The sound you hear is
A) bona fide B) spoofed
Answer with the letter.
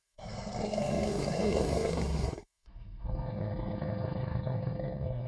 B